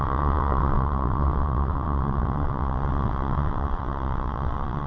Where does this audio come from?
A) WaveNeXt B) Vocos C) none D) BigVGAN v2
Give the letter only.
A